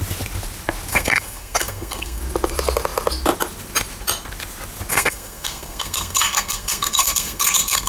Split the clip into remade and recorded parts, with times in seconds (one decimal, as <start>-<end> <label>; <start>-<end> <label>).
0.0-0.9 recorded; 0.9-2.2 remade; 2.2-4.9 recorded; 4.9-7.9 remade